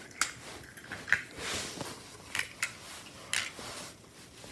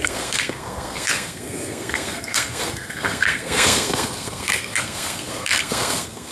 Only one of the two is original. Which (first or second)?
first